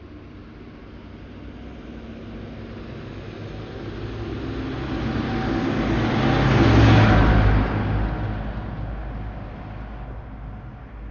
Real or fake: real